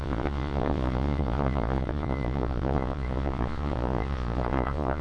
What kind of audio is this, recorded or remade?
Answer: remade